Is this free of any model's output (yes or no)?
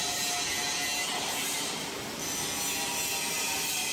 yes